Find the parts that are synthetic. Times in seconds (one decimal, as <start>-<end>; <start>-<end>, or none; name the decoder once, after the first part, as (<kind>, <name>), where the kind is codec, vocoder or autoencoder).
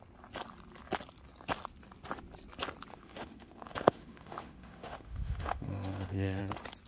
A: 2.9-6.4 (autoencoder, DAC-VAE)